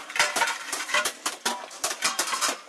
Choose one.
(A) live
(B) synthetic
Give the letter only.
B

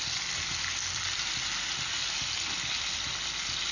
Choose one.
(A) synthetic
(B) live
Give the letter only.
B